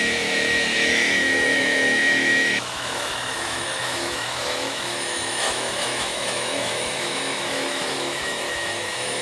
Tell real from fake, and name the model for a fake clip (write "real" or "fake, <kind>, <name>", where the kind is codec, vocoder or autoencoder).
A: fake, autoencoder, DAC-VAE